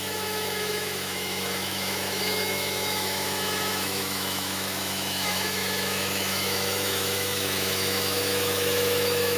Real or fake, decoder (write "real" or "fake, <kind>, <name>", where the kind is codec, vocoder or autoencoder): fake, autoencoder, DAC-VAE